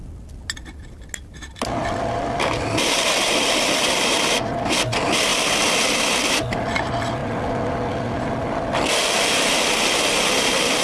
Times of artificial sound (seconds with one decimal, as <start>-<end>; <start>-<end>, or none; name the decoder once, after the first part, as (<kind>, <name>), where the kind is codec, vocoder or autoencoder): none